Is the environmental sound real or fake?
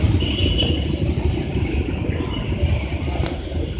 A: real